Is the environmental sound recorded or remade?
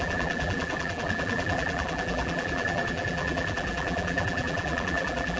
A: remade